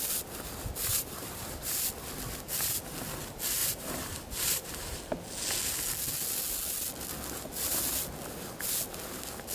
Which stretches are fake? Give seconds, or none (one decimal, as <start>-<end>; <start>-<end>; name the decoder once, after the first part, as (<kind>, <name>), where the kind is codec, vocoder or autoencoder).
0.9-1.7 (vocoder, BigVGAN v2); 3.6-5.0